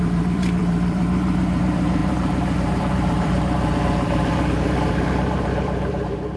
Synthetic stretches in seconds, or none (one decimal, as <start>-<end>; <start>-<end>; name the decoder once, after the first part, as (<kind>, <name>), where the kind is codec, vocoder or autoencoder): 0.0-6.4 (vocoder, BigVGAN v2)